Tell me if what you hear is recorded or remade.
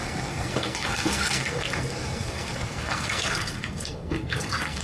remade